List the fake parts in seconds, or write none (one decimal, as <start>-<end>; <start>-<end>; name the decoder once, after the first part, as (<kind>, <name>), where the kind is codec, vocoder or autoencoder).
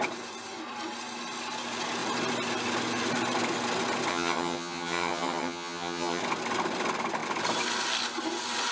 4.1-6.2 (vocoder, HiFi-GAN)